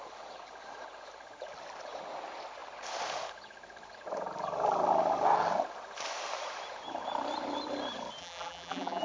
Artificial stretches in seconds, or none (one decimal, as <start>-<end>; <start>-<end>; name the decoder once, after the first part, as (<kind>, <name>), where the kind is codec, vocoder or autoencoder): 8.2-9.0 (vocoder, BigVGAN v2)